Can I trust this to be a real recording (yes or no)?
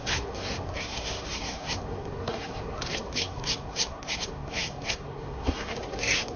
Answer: no